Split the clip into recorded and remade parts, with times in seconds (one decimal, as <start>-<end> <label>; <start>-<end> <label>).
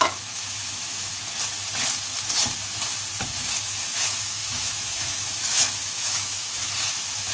0.0-1.1 remade; 1.1-3.2 recorded; 3.2-7.3 remade